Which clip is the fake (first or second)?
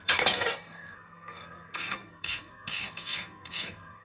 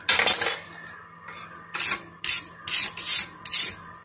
first